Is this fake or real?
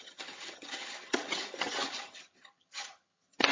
fake